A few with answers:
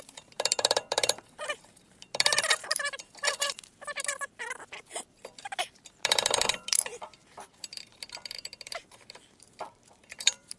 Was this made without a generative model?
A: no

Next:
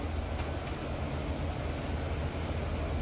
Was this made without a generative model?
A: yes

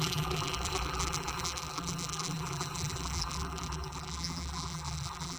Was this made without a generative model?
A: no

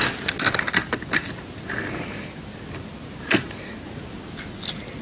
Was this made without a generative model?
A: yes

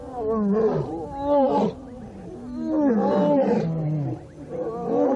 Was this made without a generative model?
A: yes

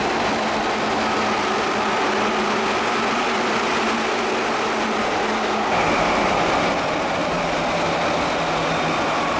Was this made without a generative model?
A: yes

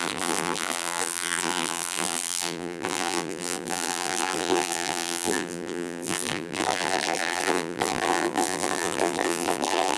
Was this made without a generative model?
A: no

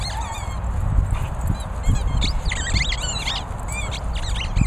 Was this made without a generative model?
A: yes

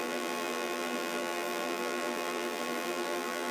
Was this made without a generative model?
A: no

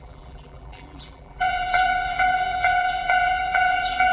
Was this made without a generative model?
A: no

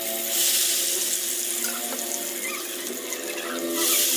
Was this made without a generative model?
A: yes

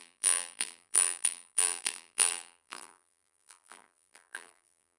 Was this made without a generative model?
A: no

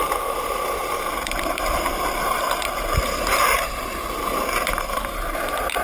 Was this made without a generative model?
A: no